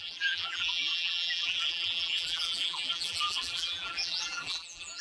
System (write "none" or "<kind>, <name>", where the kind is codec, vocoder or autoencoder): vocoder, BigVGAN v2